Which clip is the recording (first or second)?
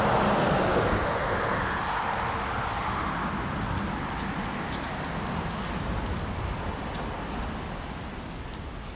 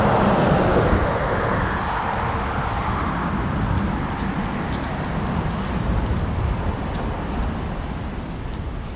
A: first